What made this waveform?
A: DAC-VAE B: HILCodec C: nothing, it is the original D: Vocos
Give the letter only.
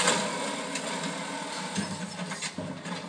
C